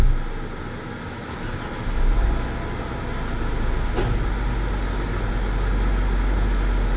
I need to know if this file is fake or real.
real